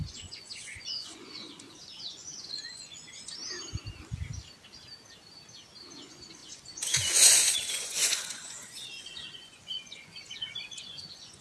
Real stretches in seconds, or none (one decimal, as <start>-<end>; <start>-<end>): 3.4-5.9